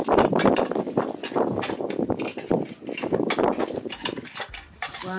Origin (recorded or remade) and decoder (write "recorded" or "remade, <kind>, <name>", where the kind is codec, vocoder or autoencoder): recorded